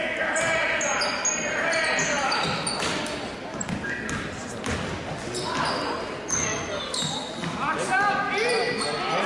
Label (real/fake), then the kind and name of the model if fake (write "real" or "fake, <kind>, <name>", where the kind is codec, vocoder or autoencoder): real